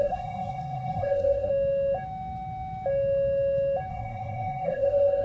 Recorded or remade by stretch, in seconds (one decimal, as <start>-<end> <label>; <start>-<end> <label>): 0.0-1.5 remade; 1.5-3.9 recorded; 3.9-5.2 remade